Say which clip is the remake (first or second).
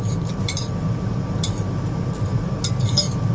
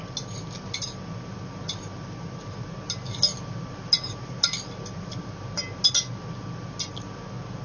first